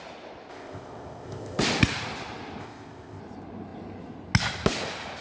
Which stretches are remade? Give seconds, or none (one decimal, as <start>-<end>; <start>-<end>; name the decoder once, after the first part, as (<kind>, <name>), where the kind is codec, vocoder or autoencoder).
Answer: 0.5-1.6 (codec, ZipCodec); 2.6-3.2